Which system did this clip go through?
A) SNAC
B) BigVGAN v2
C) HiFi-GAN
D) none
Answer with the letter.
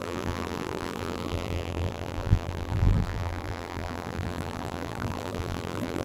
B